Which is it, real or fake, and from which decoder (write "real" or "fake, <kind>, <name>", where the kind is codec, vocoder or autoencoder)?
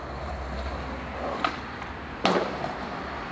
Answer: real